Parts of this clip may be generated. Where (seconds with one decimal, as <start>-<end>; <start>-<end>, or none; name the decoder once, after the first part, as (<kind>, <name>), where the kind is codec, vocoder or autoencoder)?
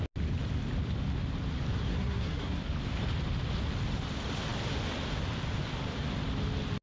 1.8-2.6 (codec, SNAC)